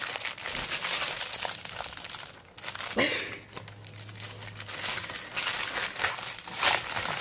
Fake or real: real